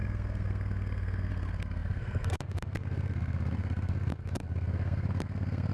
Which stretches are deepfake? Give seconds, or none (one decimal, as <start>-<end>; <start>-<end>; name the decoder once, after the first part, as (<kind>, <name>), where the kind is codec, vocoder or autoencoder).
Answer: 0.0-5.7 (codec, SNAC)